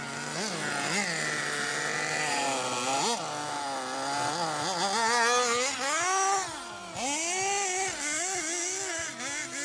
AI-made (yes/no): no